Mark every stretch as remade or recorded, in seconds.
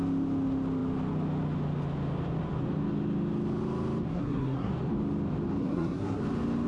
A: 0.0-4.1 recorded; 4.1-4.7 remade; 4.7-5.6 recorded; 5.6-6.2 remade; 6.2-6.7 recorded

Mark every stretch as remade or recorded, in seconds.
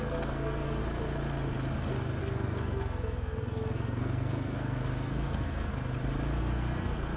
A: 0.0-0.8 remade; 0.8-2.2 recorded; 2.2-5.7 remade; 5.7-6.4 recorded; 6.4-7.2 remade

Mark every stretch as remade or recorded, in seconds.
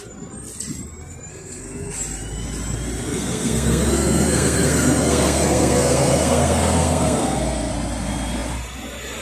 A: 0.0-1.3 recorded; 1.3-1.9 remade; 1.9-3.0 recorded; 3.0-7.7 remade; 7.7-9.2 recorded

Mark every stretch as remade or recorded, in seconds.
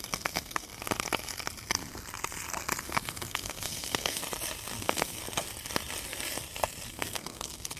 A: 0.0-0.7 remade; 0.7-2.8 recorded; 2.8-4.2 remade; 4.2-4.8 recorded; 4.8-5.2 remade; 5.2-6.9 recorded; 6.9-7.8 remade